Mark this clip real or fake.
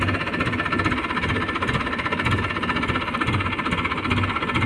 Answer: real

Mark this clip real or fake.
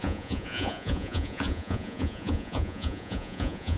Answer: fake